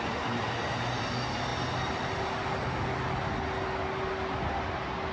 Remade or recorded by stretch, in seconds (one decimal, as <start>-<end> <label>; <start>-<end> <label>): 0.0-5.1 recorded